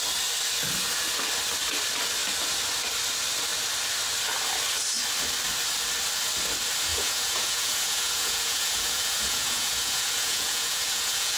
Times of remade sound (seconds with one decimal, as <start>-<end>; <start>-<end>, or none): 6.9-11.4